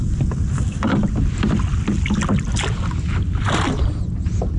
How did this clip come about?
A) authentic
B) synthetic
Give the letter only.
A